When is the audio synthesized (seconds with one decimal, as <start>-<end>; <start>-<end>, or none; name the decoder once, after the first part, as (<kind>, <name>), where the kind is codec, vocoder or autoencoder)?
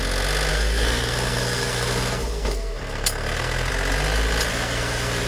0.5-3.7 (codec, SNAC); 4.5-5.3